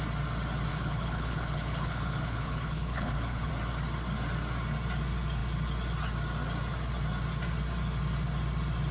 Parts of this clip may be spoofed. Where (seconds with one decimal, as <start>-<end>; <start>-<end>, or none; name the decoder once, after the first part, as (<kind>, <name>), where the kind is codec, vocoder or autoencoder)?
0.7-3.5 (codec, HILCodec)